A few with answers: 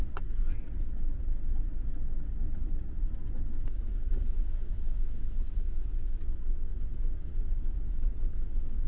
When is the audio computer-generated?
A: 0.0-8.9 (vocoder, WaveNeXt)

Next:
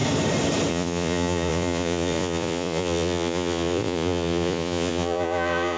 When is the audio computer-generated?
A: 0.7-5.8 (vocoder, Vocos)

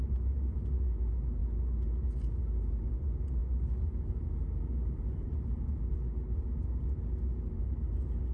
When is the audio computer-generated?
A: 4.8-5.8 (vocoder, BigVGAN v2)

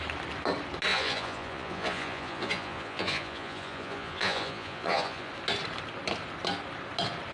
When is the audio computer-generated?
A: 0.9-5.3 (vocoder, Vocos)

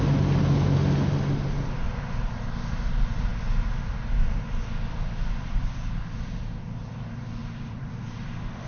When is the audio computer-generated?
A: none

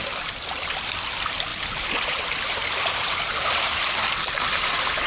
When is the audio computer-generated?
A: 1.5-4.6 (vocoder, BigVGAN v2)